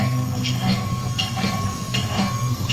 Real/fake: fake